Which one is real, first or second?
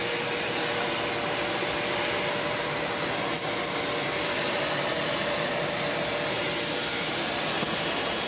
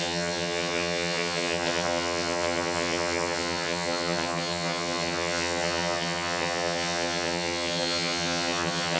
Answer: first